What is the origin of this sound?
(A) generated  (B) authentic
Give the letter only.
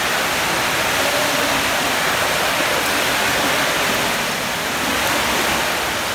B